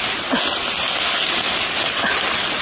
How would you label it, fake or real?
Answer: real